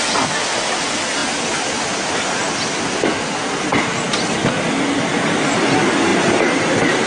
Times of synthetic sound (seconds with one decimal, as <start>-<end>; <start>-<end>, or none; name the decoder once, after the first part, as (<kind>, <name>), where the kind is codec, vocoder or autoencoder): 6.1-7.1 (vocoder, BigVGAN v2)

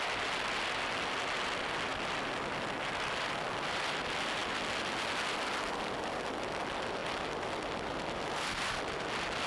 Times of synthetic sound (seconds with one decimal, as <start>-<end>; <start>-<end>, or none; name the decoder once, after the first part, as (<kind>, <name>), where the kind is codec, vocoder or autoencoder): none

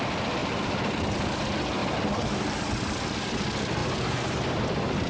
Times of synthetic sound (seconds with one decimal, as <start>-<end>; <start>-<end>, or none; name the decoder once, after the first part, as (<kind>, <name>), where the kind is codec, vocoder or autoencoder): 0.4-1.1 (vocoder, BigVGAN v2); 1.8-2.6

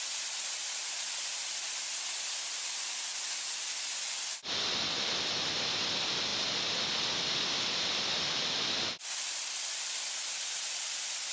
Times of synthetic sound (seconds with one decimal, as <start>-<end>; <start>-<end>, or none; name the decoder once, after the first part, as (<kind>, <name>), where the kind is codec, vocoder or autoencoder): none

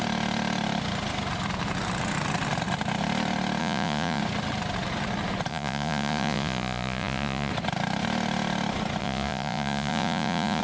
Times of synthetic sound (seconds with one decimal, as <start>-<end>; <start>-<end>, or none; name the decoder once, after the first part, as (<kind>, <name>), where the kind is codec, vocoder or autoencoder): 3.6-4.2 (vocoder, Vocos); 5.5-7.5; 9.0-10.6

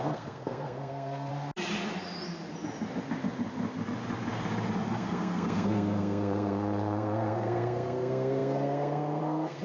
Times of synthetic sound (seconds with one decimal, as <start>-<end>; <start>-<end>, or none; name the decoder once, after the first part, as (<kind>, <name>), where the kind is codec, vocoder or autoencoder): 0.0-1.3 (codec, SNAC); 4.9-9.6

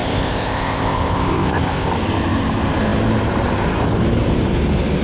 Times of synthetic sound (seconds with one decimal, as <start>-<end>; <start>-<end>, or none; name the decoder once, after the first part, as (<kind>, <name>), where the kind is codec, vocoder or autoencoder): 0.0-1.9 (codec, ZipCodec)

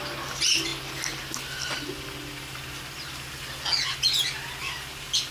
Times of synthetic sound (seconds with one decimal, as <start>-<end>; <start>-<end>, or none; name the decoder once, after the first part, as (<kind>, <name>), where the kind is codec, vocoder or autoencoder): none